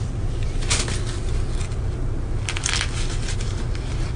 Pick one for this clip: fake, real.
real